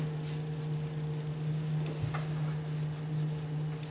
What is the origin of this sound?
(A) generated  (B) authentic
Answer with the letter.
B